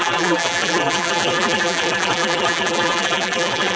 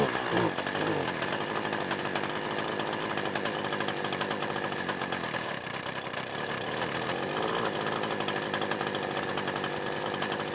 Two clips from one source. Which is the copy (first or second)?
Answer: first